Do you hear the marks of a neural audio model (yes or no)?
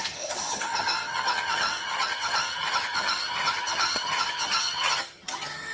yes